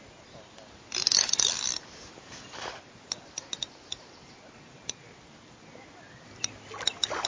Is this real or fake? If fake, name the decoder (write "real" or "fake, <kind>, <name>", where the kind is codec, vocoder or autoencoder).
real